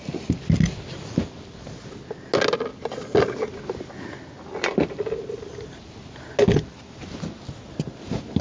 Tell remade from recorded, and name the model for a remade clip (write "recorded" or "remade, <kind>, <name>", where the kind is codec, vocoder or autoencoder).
recorded